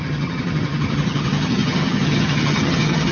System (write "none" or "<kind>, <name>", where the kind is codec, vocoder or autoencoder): vocoder, HiFi-GAN